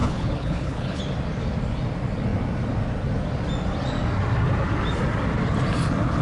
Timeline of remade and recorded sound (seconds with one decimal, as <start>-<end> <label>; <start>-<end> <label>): 0.0-1.0 remade; 1.0-6.2 recorded